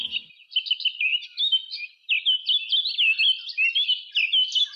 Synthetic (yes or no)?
no